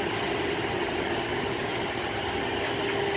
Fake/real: real